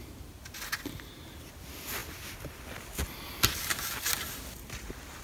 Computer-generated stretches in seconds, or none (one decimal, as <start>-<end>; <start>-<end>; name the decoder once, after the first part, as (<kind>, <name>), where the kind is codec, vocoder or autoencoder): none